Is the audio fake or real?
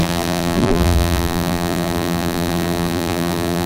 fake